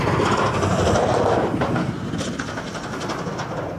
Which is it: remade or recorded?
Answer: recorded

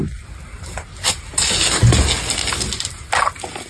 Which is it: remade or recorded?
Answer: recorded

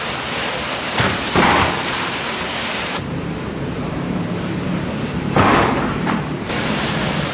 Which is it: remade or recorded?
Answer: remade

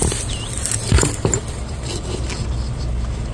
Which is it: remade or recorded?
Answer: recorded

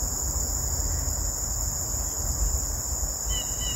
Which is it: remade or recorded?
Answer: recorded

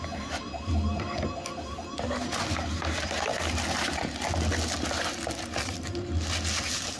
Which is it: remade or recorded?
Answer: recorded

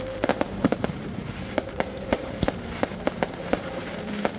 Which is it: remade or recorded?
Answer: remade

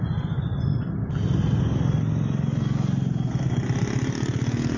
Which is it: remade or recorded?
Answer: recorded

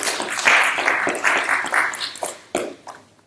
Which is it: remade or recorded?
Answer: recorded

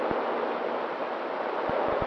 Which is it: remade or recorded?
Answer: remade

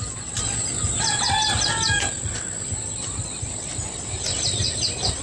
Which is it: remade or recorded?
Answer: recorded